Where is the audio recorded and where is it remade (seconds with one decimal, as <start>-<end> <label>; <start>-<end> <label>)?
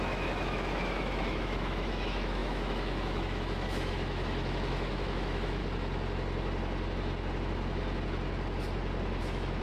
0.0-5.6 remade; 5.6-9.2 recorded; 9.2-9.6 remade